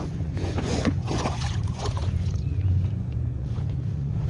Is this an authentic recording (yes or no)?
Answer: no